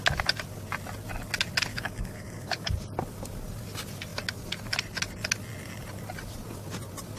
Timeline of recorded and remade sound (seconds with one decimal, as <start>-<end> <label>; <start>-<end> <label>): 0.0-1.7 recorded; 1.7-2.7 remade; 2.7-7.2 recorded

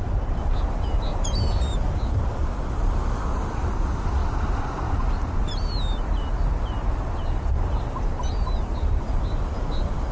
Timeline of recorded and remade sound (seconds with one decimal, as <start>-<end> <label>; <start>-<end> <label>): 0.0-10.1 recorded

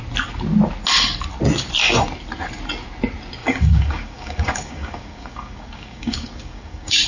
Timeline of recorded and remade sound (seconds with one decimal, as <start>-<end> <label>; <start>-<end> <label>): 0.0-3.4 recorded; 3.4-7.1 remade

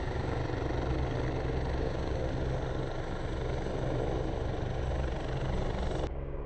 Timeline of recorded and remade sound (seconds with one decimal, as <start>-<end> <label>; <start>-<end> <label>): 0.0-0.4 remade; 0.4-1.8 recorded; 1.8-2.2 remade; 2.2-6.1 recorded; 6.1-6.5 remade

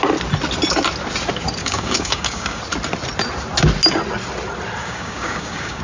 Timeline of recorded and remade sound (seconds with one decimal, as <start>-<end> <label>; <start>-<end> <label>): 0.0-1.6 recorded; 1.6-2.6 remade; 2.6-4.8 recorded; 4.8-5.8 remade

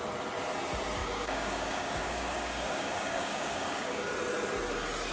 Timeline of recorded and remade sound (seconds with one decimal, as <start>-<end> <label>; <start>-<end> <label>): 0.0-1.0 recorded; 1.0-4.1 remade; 4.1-5.1 recorded